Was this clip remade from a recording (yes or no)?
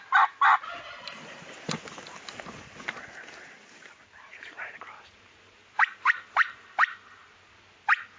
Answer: no